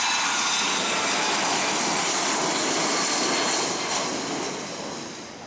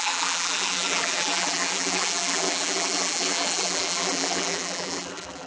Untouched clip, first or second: first